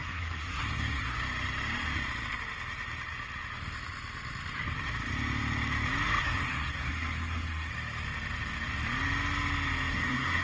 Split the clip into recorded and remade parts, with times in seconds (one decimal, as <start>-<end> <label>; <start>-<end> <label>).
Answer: 0.0-1.2 remade; 1.2-6.2 recorded; 6.2-7.7 remade; 7.7-9.9 recorded; 9.9-10.4 remade

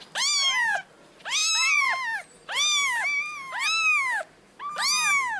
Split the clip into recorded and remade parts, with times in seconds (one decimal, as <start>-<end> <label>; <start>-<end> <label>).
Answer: 0.0-5.4 recorded

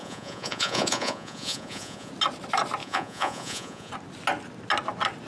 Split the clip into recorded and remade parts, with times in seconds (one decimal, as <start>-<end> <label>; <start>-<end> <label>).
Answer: 0.0-2.1 remade; 2.1-2.8 recorded; 2.8-3.9 remade; 3.9-5.3 recorded

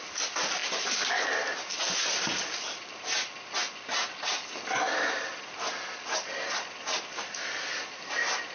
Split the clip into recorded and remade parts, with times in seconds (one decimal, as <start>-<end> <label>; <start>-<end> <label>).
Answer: 0.0-0.6 recorded; 0.6-1.3 remade; 1.3-8.5 recorded

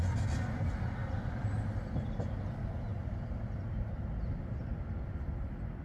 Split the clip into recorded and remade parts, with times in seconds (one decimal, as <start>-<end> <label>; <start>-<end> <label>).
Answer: 0.0-5.8 recorded